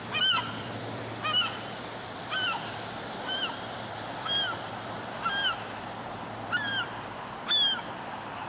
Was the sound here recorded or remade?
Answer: remade